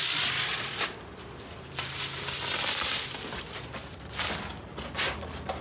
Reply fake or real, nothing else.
real